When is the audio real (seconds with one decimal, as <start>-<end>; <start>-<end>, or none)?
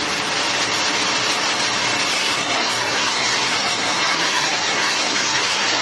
0.0-2.1